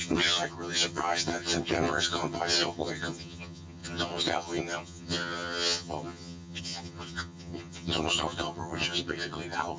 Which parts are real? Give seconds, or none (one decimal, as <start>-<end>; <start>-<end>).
none